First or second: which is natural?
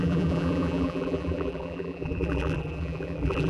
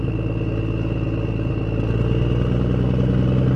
second